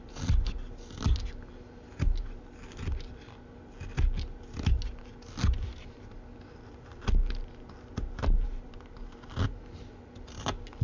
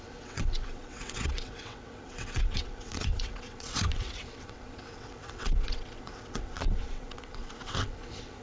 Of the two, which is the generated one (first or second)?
second